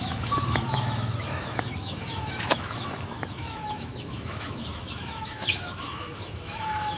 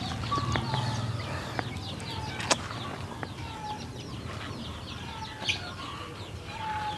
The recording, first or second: second